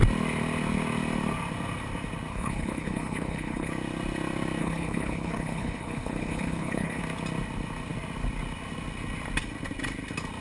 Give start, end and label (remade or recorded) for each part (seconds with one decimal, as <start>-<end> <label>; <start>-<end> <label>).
0.0-2.3 recorded; 2.3-3.7 remade; 3.7-4.6 recorded; 4.6-7.0 remade; 7.0-10.4 recorded

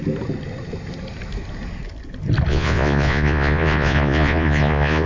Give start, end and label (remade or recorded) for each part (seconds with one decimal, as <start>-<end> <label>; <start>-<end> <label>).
0.0-2.5 recorded; 2.5-5.1 remade

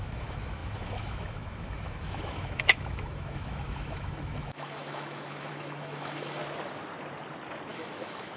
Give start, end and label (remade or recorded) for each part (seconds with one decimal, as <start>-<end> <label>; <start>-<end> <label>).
0.0-6.4 remade; 6.4-7.7 recorded; 7.7-8.4 remade

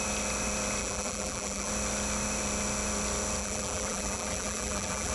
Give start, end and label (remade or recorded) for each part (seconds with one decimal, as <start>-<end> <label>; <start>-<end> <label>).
0.0-0.8 recorded; 0.8-1.7 remade; 1.7-3.4 recorded; 3.4-5.1 remade

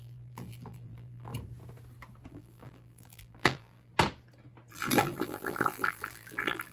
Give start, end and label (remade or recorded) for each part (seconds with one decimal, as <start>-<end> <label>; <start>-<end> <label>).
0.0-1.3 remade; 1.3-2.3 recorded; 2.3-3.9 remade; 3.9-4.7 recorded; 4.7-6.7 remade

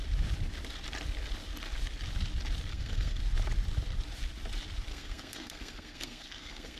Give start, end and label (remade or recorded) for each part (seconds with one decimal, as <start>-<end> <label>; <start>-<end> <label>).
0.0-2.7 recorded; 2.7-3.2 remade; 3.2-4.9 recorded; 4.9-6.8 remade